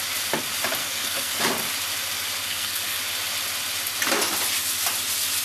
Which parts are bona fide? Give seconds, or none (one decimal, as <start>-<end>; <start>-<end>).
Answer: 0.0-0.8; 1.4-2.4; 3.0-5.4